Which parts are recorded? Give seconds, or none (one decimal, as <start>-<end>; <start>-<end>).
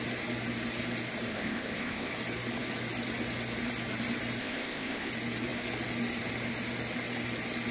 0.0-1.3; 2.1-4.4; 5.1-7.7